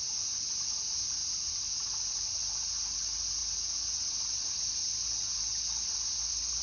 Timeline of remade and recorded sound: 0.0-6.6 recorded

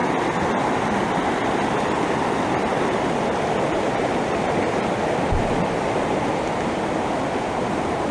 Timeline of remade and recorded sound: 0.0-8.1 recorded

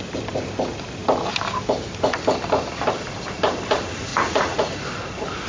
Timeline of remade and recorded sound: 0.0-4.1 recorded; 4.1-4.9 remade; 4.9-5.5 recorded

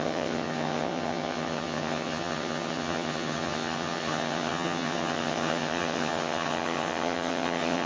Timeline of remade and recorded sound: 0.0-7.9 remade

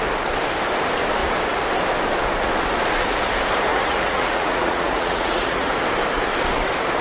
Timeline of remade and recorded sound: 0.0-3.7 recorded; 3.7-5.7 remade; 5.7-7.0 recorded